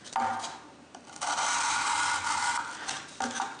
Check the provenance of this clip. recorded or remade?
recorded